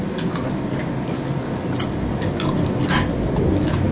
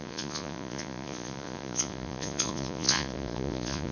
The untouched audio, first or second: first